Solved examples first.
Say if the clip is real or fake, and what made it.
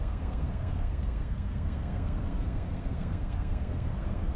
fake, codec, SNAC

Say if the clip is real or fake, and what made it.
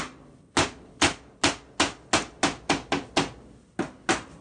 real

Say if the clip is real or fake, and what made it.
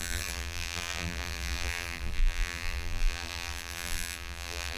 fake, vocoder, BigVGAN v2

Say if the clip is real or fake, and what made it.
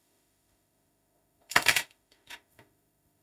fake, autoencoder, DAC-VAE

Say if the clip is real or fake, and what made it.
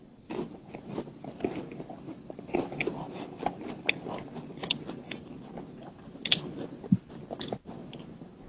real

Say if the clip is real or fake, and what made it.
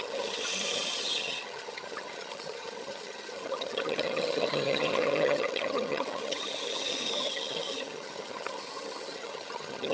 fake, vocoder, HiFi-GAN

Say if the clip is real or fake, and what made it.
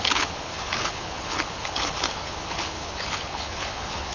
fake, codec, HILCodec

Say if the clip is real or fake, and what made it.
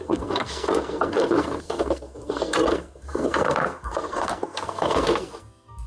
fake, codec, SNAC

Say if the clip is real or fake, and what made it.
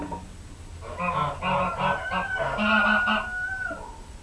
real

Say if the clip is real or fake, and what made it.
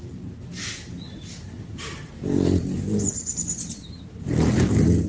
real